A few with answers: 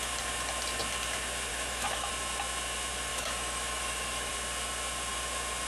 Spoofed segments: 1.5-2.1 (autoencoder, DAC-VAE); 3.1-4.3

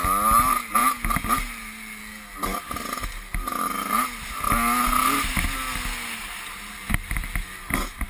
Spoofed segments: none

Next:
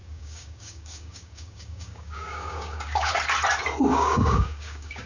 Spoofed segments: 0.0-3.1 (codec, DAC); 3.9-5.1